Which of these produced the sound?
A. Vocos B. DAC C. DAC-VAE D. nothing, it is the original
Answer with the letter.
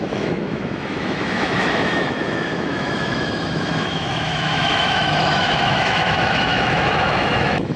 C